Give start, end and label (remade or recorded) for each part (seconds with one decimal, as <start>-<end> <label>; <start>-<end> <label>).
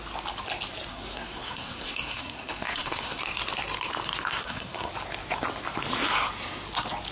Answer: 0.0-0.9 recorded; 0.9-3.2 remade; 3.2-4.4 recorded; 4.4-4.9 remade; 4.9-7.1 recorded